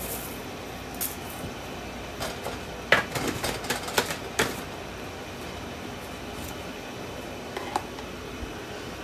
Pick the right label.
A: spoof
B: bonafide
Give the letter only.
B